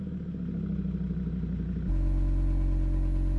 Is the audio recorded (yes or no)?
yes